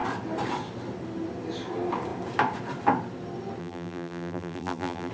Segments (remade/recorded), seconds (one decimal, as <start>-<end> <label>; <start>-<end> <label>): 0.0-3.6 recorded; 3.6-5.1 remade

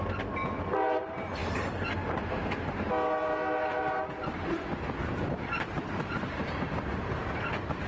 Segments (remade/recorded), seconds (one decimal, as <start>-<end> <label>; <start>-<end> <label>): 0.0-4.2 recorded; 4.2-7.9 remade

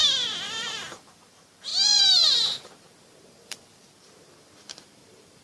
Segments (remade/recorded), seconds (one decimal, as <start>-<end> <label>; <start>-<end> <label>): 0.0-0.5 recorded; 0.5-5.4 remade

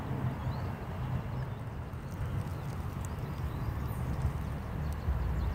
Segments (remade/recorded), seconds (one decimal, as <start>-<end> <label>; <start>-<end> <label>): 0.0-5.5 recorded

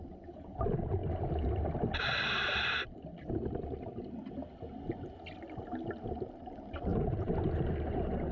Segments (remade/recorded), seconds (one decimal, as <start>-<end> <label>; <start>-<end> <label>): 0.0-6.9 recorded; 6.9-8.3 remade

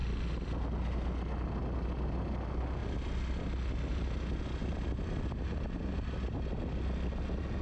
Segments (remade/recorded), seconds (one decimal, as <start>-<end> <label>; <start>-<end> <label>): 0.0-4.6 recorded; 4.6-6.5 remade; 6.5-7.6 recorded

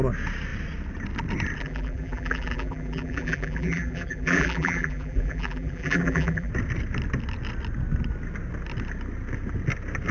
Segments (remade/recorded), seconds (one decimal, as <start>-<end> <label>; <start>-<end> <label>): 0.0-1.6 recorded; 1.6-6.5 remade; 6.5-10.1 recorded

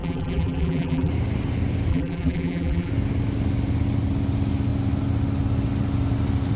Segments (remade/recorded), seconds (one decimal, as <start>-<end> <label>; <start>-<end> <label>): 0.0-1.1 remade; 1.1-1.9 recorded; 1.9-2.9 remade; 2.9-6.6 recorded